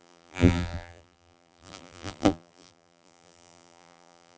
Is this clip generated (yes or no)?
yes